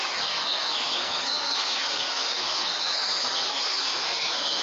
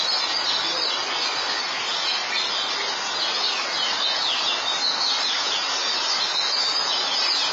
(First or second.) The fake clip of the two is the first